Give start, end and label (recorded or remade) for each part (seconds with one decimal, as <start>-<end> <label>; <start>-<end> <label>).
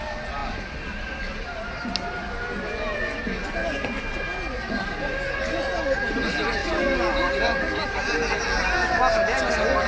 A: 0.0-9.9 recorded